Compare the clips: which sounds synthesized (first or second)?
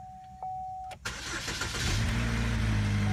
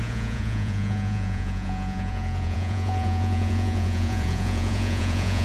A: second